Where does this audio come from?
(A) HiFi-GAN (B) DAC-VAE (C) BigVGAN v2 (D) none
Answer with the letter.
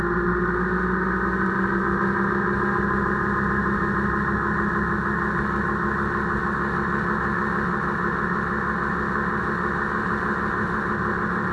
D